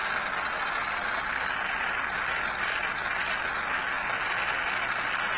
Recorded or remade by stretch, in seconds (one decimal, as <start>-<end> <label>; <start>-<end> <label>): 0.0-5.4 recorded